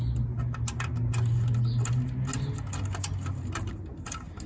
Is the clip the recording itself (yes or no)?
yes